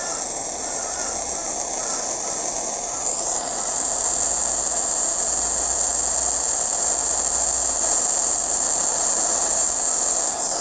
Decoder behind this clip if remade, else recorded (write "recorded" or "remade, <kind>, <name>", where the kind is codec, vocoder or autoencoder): recorded